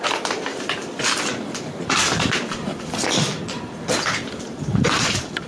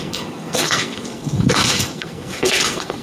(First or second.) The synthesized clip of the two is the second